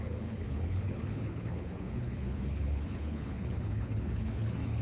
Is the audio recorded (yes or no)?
no